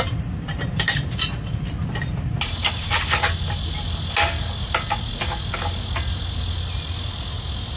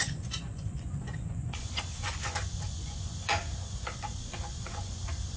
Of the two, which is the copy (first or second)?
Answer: second